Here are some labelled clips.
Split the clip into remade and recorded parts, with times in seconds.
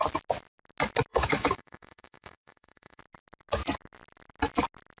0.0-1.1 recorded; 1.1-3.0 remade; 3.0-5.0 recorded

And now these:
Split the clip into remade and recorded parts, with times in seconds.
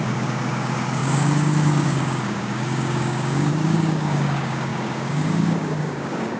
0.0-6.4 remade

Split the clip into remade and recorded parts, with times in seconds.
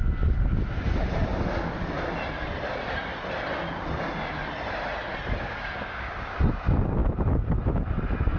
0.0-5.4 recorded; 5.4-6.3 remade; 6.3-8.4 recorded